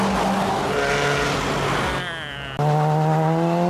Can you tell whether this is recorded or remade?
recorded